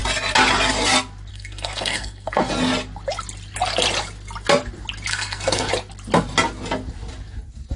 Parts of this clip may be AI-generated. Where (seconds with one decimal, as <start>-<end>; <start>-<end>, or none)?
1.3-2.5; 5.1-5.7